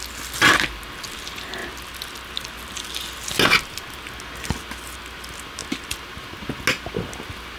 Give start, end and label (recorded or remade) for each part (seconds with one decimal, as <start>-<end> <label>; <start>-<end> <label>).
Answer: 0.0-7.6 recorded